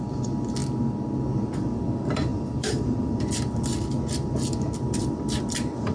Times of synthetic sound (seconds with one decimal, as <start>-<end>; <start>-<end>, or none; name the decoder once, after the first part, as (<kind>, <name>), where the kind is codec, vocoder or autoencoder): 0.0-0.6 (vocoder, BigVGAN v2); 1.2-5.9